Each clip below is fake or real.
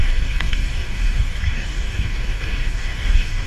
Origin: fake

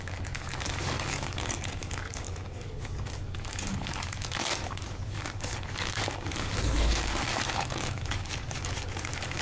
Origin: fake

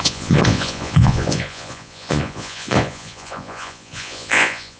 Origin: fake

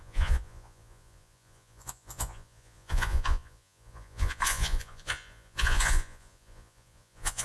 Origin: fake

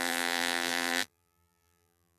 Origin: fake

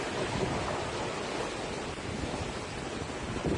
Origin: real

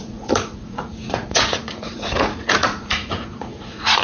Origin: fake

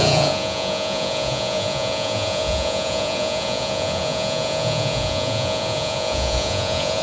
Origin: fake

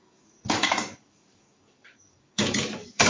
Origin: fake